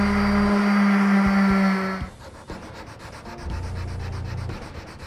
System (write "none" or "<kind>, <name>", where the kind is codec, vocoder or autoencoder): none